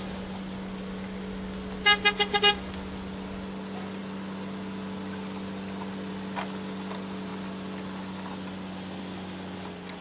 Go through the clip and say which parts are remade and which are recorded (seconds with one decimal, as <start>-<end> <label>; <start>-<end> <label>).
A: 0.0-10.0 recorded